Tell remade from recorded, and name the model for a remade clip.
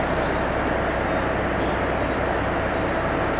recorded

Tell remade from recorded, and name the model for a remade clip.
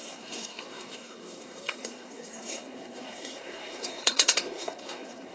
remade, codec, SNAC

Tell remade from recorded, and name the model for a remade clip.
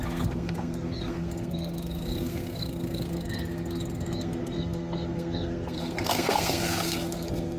remade, codec, SNAC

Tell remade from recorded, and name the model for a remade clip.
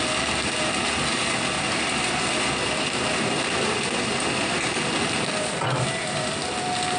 recorded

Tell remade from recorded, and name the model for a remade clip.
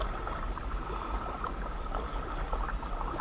recorded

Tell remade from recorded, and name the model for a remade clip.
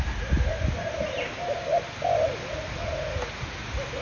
recorded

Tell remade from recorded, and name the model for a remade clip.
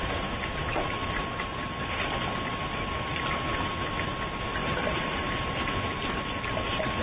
remade, vocoder, BigVGAN v2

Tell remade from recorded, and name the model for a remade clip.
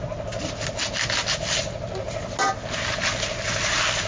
recorded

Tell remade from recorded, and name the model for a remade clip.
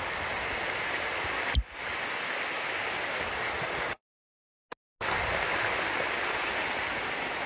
recorded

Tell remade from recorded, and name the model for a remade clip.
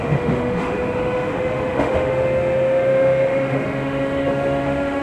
remade, autoencoder, DAC-VAE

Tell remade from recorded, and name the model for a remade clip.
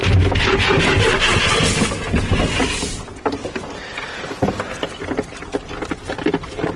recorded